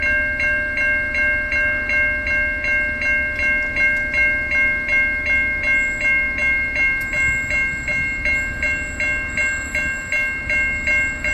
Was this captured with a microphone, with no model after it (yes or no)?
yes